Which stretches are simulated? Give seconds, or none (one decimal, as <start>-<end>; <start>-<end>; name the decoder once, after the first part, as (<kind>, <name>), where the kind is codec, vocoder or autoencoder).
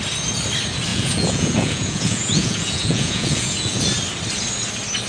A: 0.9-3.8 (vocoder, Vocos)